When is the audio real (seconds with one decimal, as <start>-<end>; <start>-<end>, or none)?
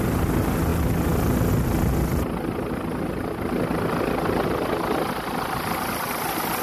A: 0.0-6.6